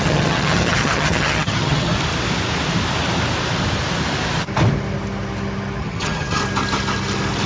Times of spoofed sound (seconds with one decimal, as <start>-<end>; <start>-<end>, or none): 0.0-1.9; 5.8-6.4